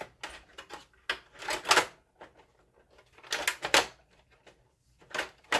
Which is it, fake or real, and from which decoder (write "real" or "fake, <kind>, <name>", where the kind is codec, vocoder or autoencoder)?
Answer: real